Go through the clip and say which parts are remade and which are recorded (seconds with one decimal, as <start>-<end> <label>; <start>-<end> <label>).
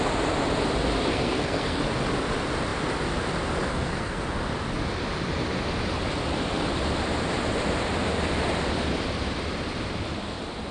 0.0-1.1 recorded; 1.1-1.8 remade; 1.8-3.7 recorded; 3.7-4.2 remade; 4.2-10.7 recorded